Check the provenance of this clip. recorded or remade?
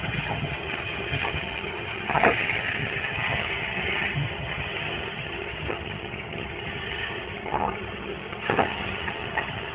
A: remade